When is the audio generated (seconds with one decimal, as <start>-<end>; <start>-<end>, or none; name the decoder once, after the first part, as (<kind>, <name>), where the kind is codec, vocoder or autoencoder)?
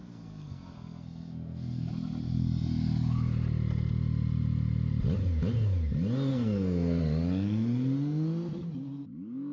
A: 0.0-1.9 (codec, SNAC); 6.3-7.0